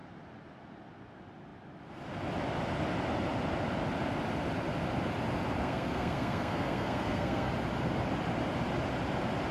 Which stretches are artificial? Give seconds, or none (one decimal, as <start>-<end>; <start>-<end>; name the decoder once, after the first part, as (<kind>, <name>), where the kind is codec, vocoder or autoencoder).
5.6-7.5 (codec, SNAC)